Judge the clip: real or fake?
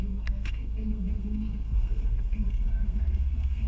fake